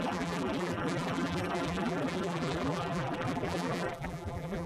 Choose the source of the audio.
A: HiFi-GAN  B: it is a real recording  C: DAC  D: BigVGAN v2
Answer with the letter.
D